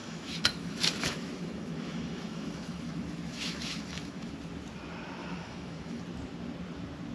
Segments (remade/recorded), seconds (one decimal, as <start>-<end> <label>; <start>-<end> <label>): 0.0-4.3 remade; 4.3-5.2 recorded; 5.2-6.0 remade; 6.0-7.1 recorded

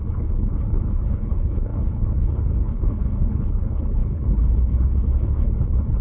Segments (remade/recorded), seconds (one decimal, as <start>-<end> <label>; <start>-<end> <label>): 0.0-6.0 remade

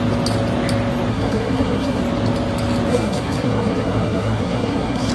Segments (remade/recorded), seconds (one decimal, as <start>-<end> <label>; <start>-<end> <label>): 0.0-1.1 recorded; 1.1-2.0 remade; 2.0-2.9 recorded; 2.9-5.1 remade

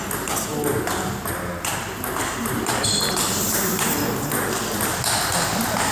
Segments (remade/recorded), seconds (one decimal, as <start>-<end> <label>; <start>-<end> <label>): 0.0-0.5 recorded; 0.5-3.7 remade; 3.7-5.9 recorded

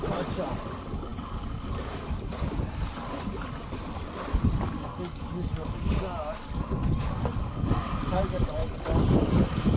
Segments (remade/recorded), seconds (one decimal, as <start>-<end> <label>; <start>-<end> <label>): 0.0-1.1 recorded; 1.1-4.6 remade; 4.6-8.6 recorded; 8.6-9.3 remade; 9.3-9.8 recorded

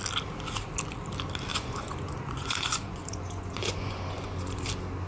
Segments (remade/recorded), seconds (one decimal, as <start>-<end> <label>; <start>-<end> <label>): 0.0-1.5 recorded; 1.5-4.6 remade; 4.6-5.1 recorded

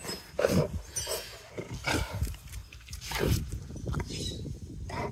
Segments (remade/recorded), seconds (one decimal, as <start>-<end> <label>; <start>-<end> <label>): 0.0-2.6 recorded; 2.6-3.4 remade; 3.4-5.1 recorded